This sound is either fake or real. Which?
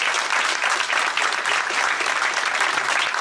real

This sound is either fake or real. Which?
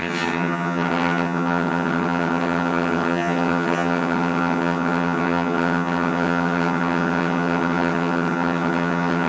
fake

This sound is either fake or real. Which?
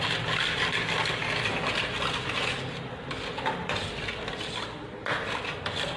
real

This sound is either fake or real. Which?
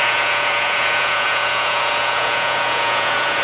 fake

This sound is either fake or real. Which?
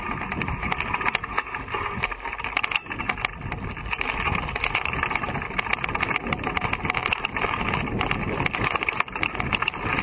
real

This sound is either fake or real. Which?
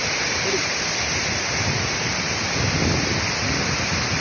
real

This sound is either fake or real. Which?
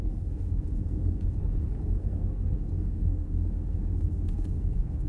fake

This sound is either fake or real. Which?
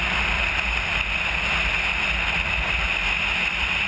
real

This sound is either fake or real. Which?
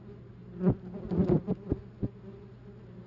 real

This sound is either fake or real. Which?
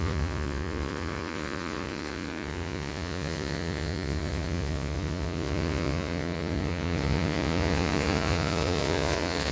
fake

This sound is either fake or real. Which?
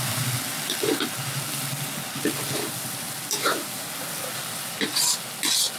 real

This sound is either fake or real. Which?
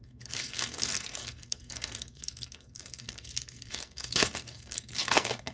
fake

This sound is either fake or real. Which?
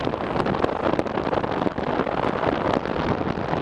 real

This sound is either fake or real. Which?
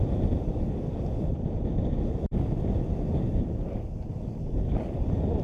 real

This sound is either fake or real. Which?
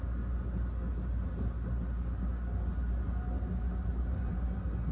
real